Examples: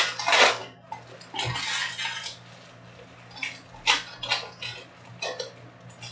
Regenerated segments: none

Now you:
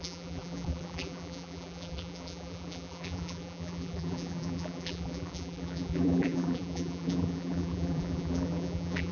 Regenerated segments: 0.0-9.1 (vocoder, BigVGAN v2)

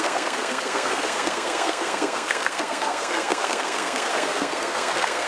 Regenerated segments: 0.0-5.3 (codec, SNAC)

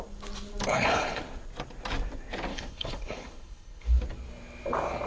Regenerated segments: 0.7-1.2 (codec, HILCodec); 2.5-4.0

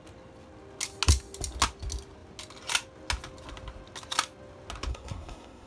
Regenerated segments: 4.9-5.7 (codec, SNAC)

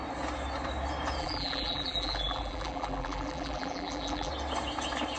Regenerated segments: 1.2-4.3 (vocoder, BigVGAN v2)